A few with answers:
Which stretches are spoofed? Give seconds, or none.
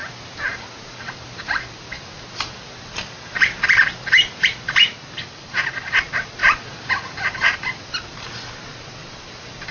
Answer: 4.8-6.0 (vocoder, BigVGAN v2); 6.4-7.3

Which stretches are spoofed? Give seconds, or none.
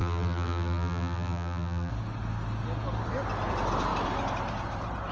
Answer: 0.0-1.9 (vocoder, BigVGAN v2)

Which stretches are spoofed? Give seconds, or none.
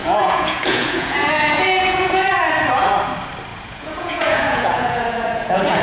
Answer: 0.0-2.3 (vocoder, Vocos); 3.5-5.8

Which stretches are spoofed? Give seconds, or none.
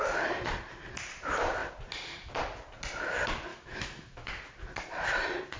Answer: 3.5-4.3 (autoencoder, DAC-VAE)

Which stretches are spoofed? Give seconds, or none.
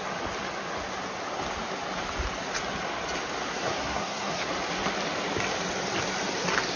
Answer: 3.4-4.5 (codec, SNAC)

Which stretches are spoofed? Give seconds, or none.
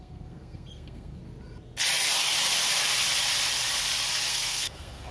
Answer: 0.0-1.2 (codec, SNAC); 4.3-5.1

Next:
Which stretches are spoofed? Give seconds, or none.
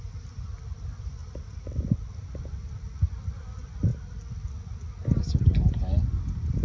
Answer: none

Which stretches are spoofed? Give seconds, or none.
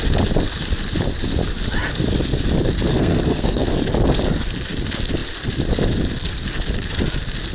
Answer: 2.9-3.7 (codec, SNAC)